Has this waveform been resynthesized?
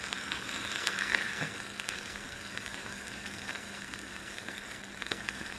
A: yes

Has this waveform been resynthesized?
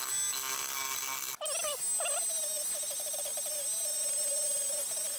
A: no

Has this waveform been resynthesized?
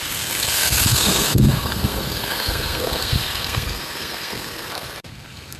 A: yes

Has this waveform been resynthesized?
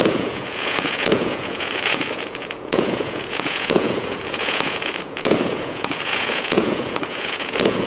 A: yes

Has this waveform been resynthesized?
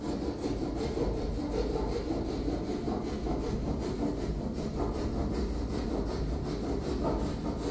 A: no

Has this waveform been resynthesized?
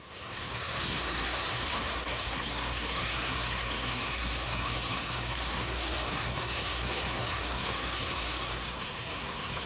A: yes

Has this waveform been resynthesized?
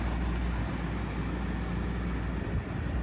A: no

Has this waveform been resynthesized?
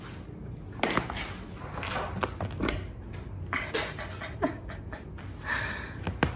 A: no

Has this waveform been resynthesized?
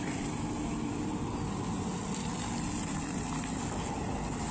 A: no